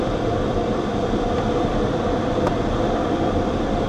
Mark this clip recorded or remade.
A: remade